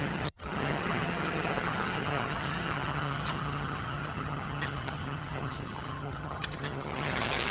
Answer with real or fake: fake